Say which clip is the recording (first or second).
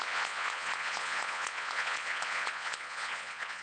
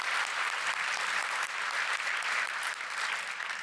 second